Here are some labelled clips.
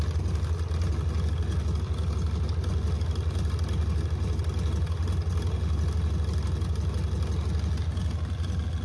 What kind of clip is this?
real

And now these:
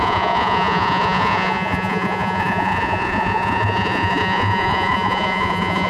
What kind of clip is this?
fake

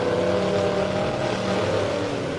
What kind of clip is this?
real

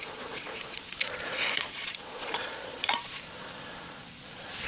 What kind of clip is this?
fake